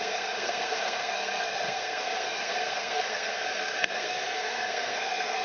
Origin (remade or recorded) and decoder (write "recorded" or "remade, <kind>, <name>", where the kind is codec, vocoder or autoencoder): remade, codec, SNAC